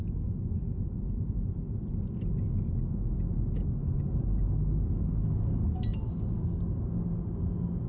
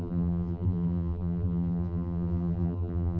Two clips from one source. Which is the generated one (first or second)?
second